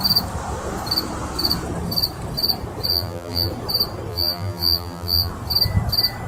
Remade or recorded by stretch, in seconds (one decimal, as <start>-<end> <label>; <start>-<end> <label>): 0.0-2.9 recorded; 2.9-3.5 remade; 3.5-4.1 recorded; 4.1-5.3 remade; 5.3-6.3 recorded